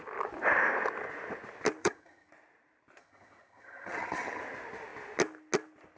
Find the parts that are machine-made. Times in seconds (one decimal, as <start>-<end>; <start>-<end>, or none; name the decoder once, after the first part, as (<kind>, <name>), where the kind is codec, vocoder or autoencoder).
1.8-2.3 (vocoder, HiFi-GAN); 3.0-4.4

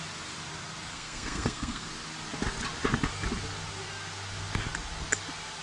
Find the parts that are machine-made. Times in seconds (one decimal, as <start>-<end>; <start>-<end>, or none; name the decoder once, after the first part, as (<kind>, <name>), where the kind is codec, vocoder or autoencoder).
0.9-1.9 (codec, SNAC)

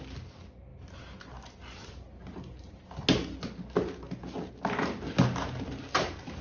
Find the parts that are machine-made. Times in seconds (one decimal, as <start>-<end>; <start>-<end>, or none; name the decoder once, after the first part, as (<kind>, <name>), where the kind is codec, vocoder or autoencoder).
none

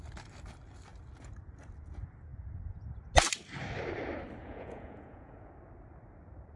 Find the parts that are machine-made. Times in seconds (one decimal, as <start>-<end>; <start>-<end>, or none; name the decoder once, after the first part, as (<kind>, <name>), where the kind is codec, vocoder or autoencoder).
4.4-5.5 (vocoder, Vocos)

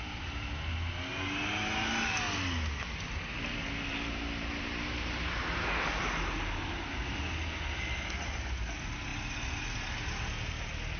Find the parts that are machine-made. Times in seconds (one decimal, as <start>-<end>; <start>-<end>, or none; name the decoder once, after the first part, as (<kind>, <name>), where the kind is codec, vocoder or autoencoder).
none

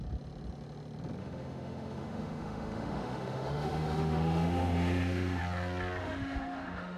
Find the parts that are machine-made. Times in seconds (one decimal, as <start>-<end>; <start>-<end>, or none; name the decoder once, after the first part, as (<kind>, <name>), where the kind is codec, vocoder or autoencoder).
1.2-5.4 (autoencoder, DAC-VAE); 6.0-7.0

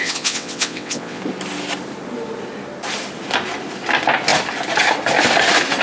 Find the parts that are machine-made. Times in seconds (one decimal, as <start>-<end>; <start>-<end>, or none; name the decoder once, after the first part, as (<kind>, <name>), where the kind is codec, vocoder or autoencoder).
0.0-1.2 (vocoder, WaveNeXt)

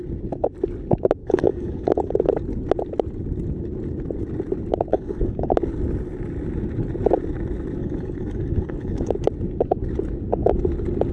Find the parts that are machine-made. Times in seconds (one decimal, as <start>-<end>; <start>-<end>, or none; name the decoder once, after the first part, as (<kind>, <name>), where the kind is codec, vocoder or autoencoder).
1.2-2.1 (codec, DAC); 4.9-5.5; 7.8-9.1